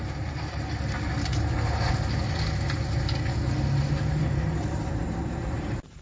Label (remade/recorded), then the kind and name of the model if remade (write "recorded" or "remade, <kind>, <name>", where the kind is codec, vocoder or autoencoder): remade, vocoder, BigVGAN v2